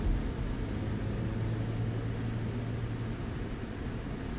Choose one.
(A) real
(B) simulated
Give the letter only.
A